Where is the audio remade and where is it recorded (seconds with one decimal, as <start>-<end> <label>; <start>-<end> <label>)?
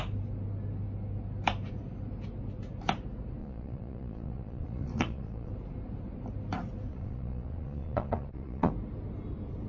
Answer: 0.0-3.4 recorded; 3.4-5.5 remade; 5.5-6.9 recorded; 6.9-8.7 remade; 8.7-9.7 recorded